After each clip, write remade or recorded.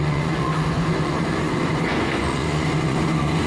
remade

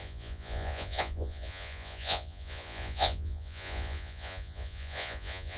remade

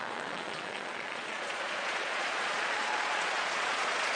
remade